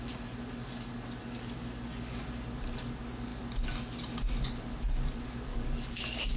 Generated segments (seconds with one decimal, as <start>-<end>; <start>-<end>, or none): 1.2-2.2; 5.5-6.4